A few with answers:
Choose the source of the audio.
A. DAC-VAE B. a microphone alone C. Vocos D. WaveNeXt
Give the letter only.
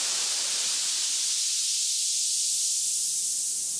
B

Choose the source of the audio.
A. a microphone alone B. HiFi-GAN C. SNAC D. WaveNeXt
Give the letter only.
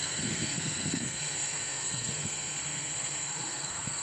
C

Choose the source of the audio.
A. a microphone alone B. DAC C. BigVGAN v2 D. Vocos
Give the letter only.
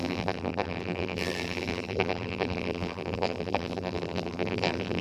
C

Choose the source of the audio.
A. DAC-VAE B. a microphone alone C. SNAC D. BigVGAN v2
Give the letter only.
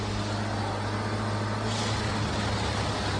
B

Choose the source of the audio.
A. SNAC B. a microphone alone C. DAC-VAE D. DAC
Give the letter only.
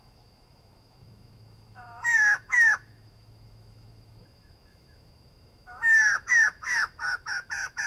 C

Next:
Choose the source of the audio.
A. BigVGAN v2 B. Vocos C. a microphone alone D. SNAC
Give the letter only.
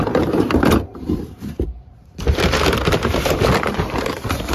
A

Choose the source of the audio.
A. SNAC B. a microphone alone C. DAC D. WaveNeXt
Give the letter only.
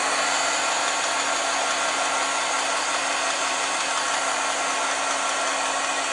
B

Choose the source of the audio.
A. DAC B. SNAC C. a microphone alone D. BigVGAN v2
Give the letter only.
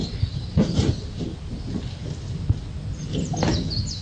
C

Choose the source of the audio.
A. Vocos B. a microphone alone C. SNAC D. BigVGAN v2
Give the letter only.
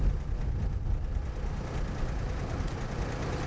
B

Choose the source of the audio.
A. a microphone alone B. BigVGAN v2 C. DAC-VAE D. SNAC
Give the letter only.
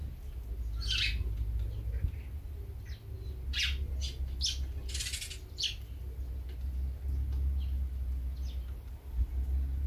A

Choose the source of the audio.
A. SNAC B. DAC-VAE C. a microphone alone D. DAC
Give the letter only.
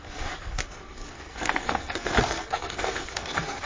A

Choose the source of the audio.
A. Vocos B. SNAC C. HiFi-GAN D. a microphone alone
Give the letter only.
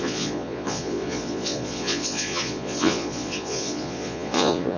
A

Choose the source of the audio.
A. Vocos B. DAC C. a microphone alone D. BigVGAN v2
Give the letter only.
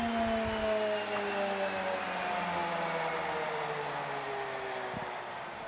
C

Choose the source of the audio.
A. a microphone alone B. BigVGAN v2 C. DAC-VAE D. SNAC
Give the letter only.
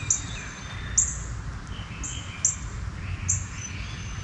A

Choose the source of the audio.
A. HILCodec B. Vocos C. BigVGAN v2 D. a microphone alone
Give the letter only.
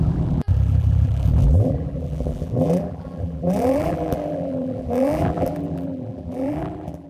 C